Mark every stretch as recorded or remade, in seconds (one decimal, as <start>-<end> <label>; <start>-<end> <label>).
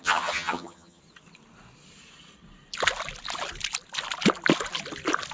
0.0-1.0 remade; 1.0-5.3 recorded